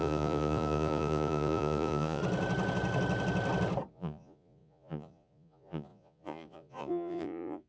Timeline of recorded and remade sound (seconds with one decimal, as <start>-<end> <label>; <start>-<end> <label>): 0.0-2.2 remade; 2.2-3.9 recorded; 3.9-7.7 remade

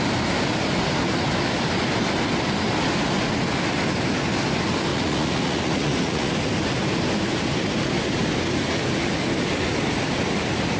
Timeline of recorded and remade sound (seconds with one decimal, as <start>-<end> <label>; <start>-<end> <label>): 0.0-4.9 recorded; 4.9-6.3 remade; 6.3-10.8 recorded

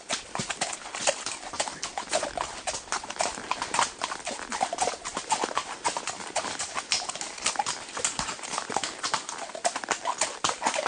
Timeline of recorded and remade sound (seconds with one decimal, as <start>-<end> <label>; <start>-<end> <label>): 0.0-10.9 recorded

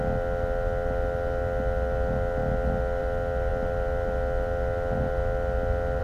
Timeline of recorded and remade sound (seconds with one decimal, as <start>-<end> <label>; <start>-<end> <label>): 0.0-6.0 recorded

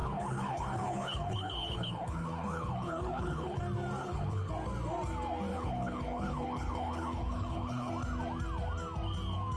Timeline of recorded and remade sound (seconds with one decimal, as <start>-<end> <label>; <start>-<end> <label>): 0.0-3.6 remade; 3.6-4.0 recorded; 4.0-4.5 remade; 4.5-5.5 recorded; 5.5-7.9 remade; 7.9-9.6 recorded